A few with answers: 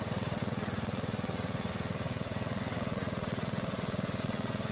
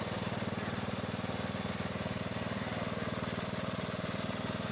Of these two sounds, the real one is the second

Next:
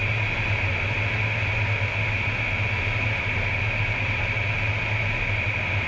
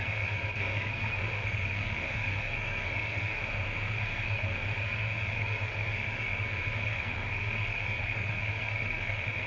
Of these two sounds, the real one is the first